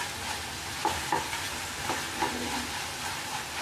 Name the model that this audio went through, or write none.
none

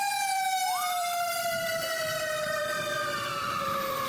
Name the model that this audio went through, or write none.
vocoder, BigVGAN v2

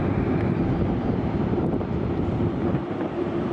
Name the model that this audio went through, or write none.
vocoder, BigVGAN v2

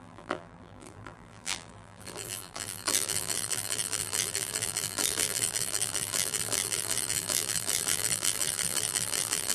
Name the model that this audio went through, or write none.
vocoder, BigVGAN v2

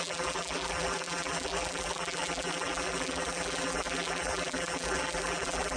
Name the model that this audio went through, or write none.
vocoder, BigVGAN v2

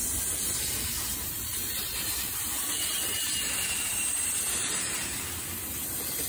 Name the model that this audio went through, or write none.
vocoder, BigVGAN v2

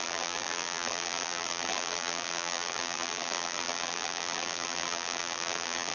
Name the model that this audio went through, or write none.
vocoder, BigVGAN v2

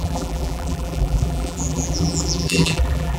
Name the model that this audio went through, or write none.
vocoder, BigVGAN v2